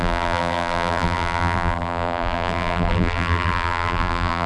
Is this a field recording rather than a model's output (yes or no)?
no